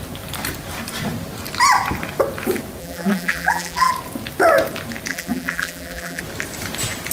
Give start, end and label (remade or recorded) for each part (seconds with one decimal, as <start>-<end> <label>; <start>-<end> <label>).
0.0-2.8 recorded; 2.8-3.9 remade; 3.9-5.1 recorded; 5.1-6.2 remade; 6.2-7.1 recorded